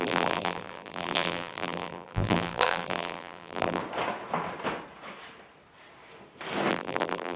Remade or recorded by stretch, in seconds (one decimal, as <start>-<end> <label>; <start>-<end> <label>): 0.0-3.8 remade; 3.8-6.7 recorded; 6.7-7.4 remade